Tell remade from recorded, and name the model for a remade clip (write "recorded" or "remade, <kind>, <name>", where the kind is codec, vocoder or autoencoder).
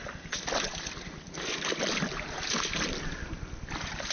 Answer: recorded